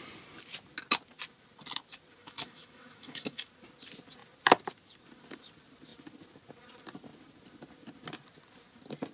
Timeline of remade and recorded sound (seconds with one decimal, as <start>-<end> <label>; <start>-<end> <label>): 0.0-2.2 recorded; 2.2-3.5 remade; 3.5-9.1 recorded